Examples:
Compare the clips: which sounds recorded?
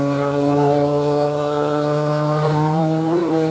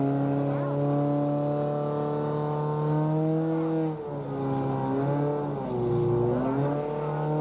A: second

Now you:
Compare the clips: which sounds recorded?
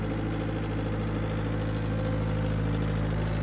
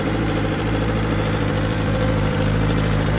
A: first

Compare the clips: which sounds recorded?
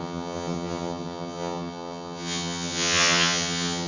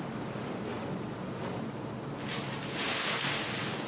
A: second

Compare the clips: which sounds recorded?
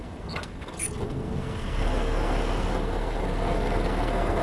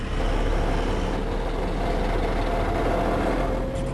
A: second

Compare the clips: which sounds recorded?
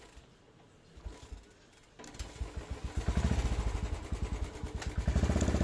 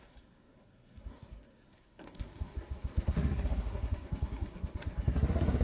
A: first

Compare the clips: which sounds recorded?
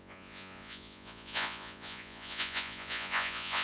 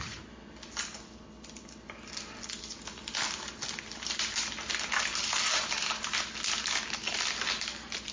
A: second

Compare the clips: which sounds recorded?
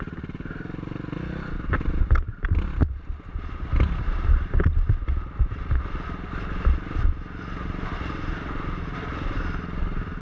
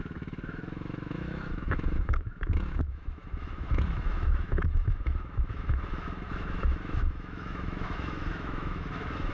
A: first